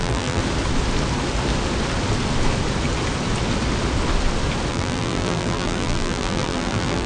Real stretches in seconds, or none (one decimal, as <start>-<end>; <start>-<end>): 0.4-4.7